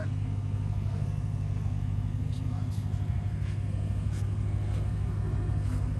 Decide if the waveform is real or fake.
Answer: fake